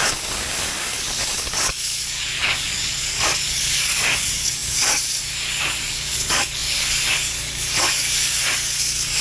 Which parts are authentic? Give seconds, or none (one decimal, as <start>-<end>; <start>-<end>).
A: none